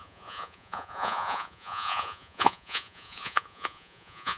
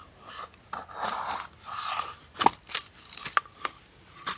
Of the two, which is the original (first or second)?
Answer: second